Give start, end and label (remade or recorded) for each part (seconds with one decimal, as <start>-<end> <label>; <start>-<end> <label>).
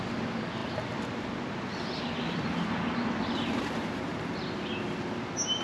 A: 0.0-5.6 recorded